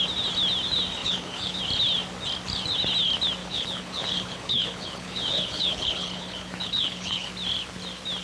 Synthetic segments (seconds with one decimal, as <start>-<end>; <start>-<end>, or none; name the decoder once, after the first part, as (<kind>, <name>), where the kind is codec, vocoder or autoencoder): 1.0-1.6 (codec, HILCodec); 3.4-7.3